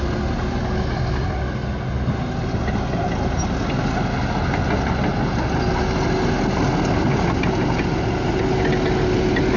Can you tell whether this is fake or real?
real